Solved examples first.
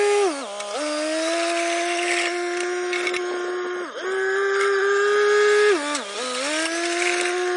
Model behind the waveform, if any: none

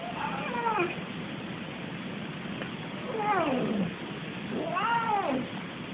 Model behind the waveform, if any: none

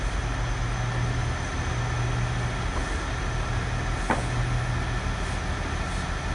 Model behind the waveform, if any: none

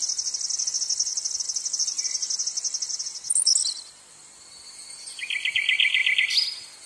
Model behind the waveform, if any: none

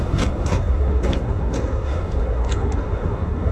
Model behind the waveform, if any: codec, SNAC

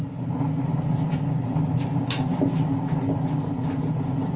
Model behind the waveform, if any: none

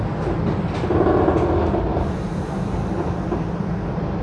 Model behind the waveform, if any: none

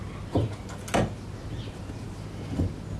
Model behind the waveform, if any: none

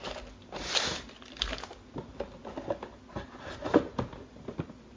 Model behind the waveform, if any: none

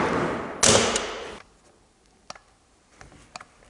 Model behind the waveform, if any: none